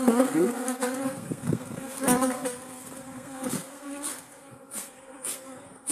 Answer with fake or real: fake